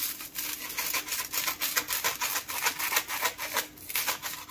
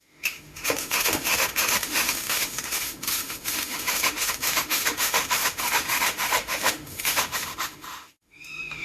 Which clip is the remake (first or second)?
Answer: second